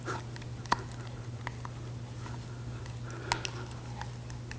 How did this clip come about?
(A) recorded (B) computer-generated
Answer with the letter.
A